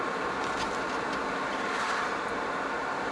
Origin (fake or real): real